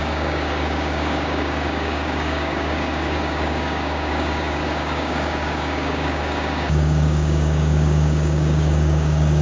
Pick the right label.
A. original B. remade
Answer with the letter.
B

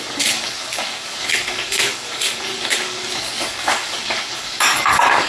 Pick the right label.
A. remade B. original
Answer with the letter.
A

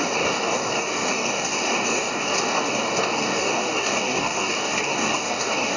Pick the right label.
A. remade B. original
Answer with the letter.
A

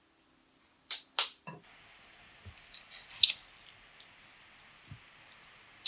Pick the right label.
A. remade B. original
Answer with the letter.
B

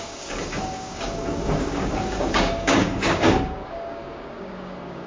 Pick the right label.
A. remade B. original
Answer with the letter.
A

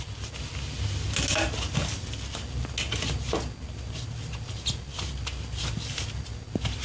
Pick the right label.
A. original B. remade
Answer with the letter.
A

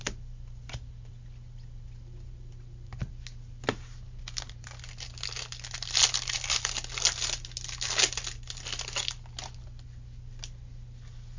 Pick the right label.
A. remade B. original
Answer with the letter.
B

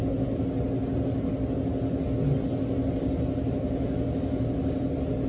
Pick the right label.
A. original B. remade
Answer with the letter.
A